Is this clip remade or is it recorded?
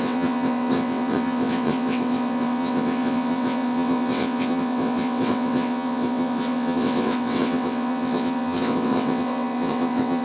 remade